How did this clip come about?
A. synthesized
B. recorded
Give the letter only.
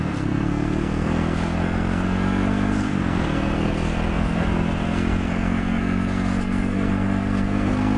A